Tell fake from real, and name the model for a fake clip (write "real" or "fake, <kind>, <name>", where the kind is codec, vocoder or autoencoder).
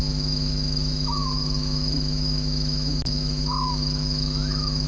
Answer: fake, autoencoder, DAC-VAE